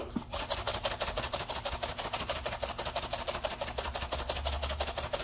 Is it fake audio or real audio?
real